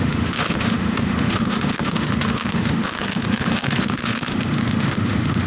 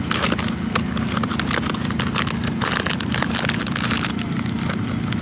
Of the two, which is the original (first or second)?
second